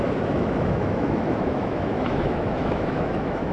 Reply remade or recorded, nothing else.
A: remade